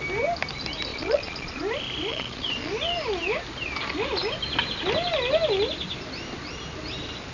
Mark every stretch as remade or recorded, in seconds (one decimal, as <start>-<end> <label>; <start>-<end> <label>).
0.0-0.9 recorded; 0.9-1.6 remade; 1.6-2.1 recorded; 2.1-2.7 remade; 2.7-7.3 recorded